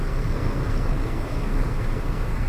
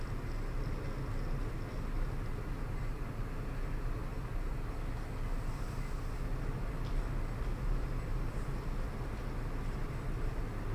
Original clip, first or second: second